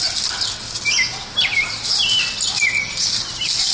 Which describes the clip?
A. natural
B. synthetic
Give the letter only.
A